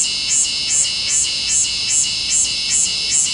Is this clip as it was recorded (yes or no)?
yes